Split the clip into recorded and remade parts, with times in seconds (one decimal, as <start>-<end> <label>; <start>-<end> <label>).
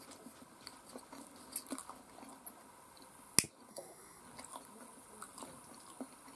0.0-3.7 recorded; 3.7-4.2 remade; 4.2-6.4 recorded